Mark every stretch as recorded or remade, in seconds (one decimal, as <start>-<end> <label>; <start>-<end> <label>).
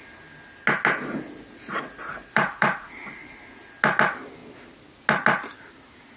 0.0-2.1 recorded; 2.1-2.8 remade; 2.8-6.2 recorded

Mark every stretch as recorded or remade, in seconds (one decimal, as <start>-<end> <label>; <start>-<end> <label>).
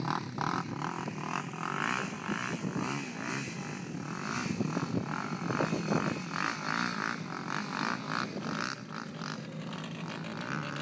0.0-10.8 recorded